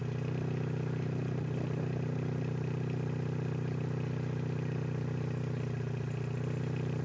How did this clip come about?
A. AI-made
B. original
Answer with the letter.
B